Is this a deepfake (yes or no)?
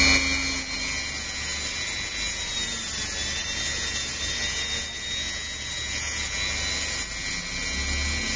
no